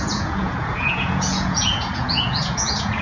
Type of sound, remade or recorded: remade